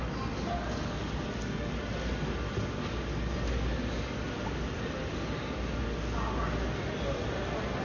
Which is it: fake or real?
real